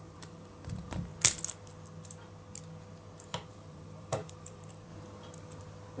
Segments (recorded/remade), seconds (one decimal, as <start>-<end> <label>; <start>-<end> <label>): 0.0-1.1 remade; 1.1-3.5 recorded; 3.5-4.9 remade; 4.9-6.0 recorded